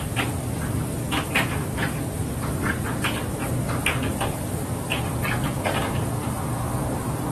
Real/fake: real